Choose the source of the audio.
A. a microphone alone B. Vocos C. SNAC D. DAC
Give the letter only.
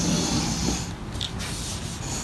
A